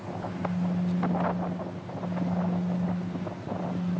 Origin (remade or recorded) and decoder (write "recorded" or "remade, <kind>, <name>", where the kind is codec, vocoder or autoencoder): recorded